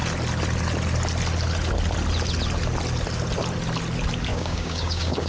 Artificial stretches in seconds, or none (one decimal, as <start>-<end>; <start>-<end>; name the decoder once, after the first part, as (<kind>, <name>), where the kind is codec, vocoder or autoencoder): 4.3-5.3 (codec, DAC)